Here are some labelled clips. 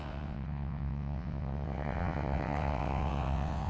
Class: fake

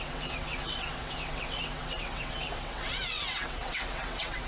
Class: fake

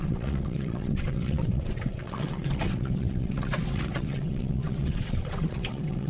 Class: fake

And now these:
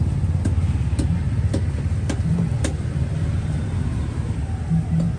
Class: real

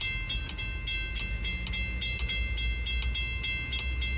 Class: real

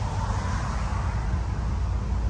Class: real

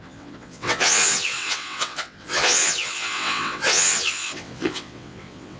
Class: fake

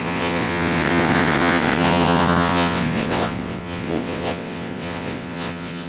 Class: fake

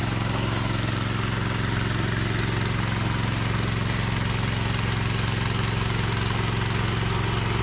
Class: real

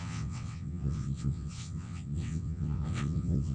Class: fake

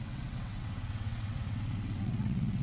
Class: fake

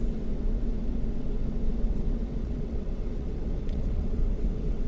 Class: fake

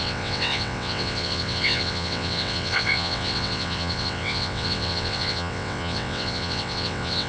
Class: fake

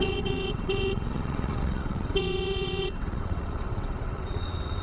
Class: fake